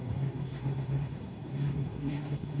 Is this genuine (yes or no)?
no